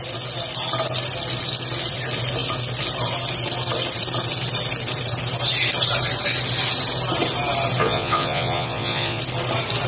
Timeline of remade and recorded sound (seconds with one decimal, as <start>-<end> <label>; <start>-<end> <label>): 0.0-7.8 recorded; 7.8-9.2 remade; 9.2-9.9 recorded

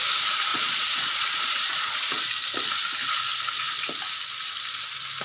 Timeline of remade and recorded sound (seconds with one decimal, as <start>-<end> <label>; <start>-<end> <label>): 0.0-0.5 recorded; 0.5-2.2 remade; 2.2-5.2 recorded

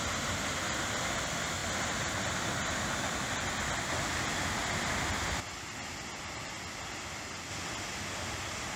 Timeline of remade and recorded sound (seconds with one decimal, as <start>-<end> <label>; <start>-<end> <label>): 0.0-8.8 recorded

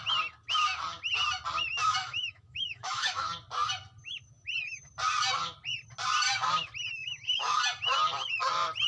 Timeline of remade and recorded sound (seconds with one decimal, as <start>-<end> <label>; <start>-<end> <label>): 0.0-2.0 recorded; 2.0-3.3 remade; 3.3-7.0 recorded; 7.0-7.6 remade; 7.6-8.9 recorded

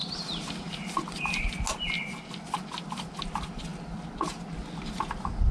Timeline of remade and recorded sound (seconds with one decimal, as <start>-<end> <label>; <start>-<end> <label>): 0.0-5.5 recorded

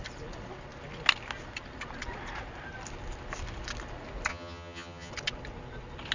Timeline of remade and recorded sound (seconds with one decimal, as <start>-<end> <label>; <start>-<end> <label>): 0.0-4.3 recorded; 4.3-5.1 remade; 5.1-6.1 recorded